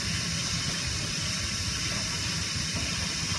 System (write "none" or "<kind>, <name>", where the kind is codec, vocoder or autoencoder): none